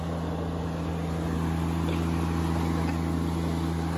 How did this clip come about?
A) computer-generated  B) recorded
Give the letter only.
B